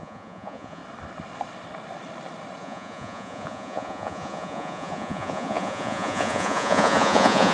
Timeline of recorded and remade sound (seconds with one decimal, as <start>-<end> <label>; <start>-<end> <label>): 0.0-0.8 remade; 0.8-2.6 recorded; 2.6-7.5 remade